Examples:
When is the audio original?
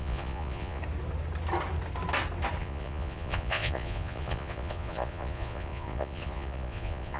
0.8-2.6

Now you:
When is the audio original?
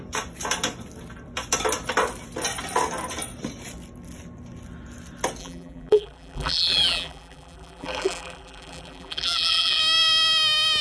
0.0-5.4; 9.8-10.8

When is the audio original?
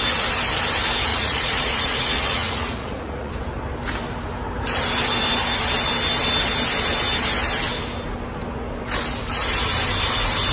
0.0-1.1; 3.3-10.5